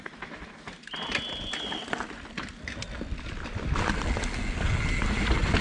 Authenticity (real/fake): real